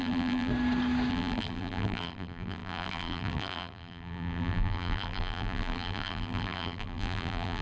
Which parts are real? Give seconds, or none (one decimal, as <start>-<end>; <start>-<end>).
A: 0.5-1.1